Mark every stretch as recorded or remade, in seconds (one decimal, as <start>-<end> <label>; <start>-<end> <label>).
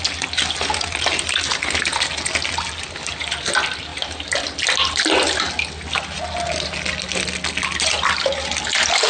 0.0-9.1 recorded